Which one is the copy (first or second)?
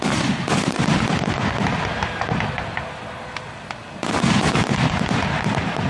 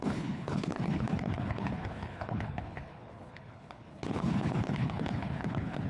second